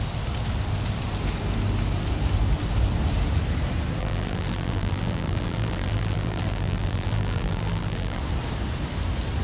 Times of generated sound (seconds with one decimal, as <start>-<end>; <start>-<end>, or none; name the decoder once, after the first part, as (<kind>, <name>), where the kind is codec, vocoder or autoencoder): 4.0-8.2 (vocoder, BigVGAN v2)